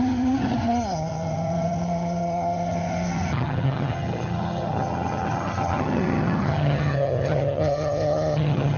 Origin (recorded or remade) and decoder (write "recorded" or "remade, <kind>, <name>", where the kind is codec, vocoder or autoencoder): remade, vocoder, HiFi-GAN